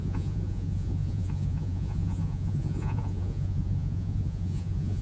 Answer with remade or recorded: remade